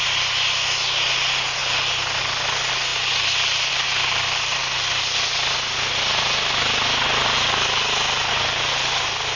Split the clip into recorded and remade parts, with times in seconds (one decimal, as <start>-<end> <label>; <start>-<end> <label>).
0.0-9.4 recorded